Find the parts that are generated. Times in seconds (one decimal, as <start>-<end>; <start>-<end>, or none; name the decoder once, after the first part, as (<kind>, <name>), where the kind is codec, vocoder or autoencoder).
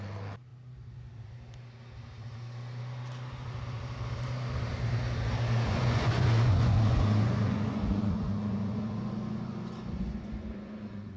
5.7-11.2 (vocoder, Vocos)